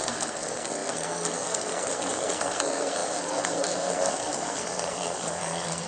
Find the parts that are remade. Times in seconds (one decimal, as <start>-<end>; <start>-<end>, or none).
0.0-5.9